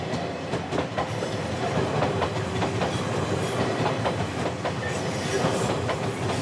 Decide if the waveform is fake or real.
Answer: real